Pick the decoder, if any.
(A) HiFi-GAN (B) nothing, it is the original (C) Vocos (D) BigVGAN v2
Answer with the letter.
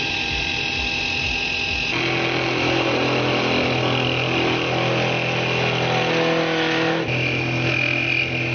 B